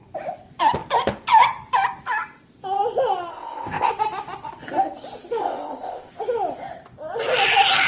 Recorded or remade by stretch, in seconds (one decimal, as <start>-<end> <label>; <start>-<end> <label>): 0.0-3.3 recorded; 3.3-3.9 remade; 3.9-5.4 recorded; 5.4-6.1 remade; 6.1-7.9 recorded